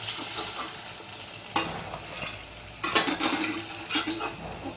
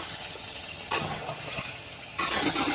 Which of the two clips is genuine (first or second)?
first